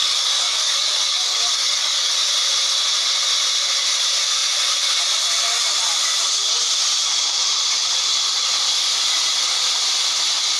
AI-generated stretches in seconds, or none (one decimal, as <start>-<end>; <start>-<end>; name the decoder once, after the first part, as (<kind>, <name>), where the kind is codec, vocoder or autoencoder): 0.0-2.1 (codec, DAC)